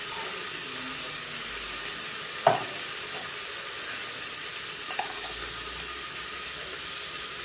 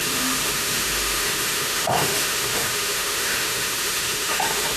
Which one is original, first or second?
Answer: first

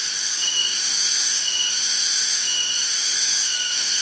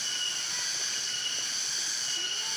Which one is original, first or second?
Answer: second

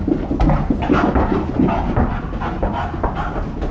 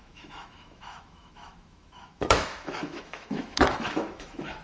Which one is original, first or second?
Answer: first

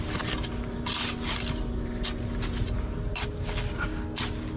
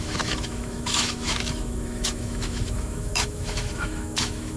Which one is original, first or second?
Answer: first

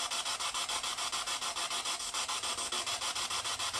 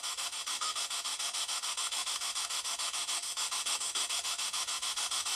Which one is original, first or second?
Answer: first